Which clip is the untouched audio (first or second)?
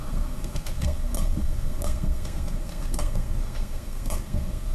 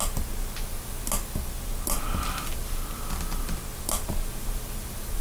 second